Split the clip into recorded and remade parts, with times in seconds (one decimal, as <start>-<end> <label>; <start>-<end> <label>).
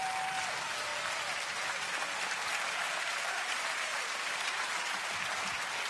0.0-3.1 recorded; 3.1-4.0 remade; 4.0-5.9 recorded